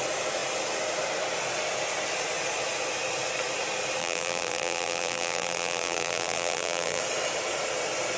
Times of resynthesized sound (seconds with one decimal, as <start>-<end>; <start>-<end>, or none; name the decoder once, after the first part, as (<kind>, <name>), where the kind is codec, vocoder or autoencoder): 4.0-7.0 (vocoder, BigVGAN v2)